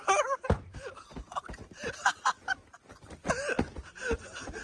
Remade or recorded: recorded